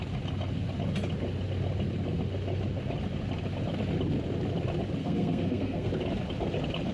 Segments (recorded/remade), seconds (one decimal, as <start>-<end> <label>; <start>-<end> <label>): 0.0-5.0 recorded; 5.0-5.9 remade; 5.9-6.9 recorded